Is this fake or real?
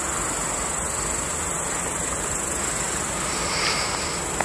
real